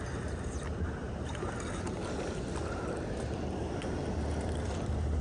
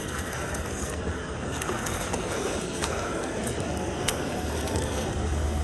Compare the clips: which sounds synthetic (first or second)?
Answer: second